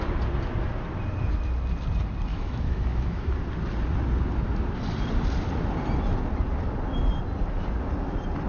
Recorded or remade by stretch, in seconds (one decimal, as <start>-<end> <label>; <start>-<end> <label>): 0.0-2.3 recorded; 2.3-3.3 remade; 3.3-8.5 recorded